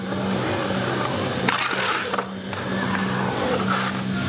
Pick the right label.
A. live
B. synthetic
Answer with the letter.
A